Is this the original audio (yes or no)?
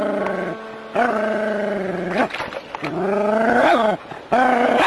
yes